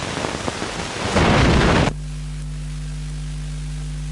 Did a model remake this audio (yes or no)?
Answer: no